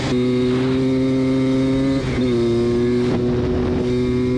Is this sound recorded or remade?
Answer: recorded